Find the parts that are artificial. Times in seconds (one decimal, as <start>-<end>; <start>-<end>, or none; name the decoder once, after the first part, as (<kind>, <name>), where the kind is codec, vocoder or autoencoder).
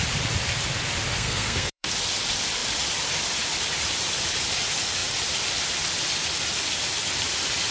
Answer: 1.1-1.9 (codec, SNAC)